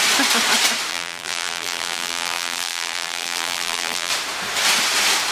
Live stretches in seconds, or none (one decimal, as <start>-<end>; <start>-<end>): 0.0-0.9; 4.1-5.3